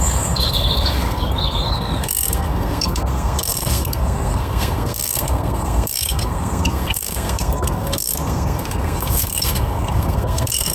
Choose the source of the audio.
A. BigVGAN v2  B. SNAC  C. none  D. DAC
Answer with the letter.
B